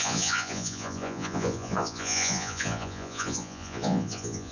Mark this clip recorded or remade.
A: remade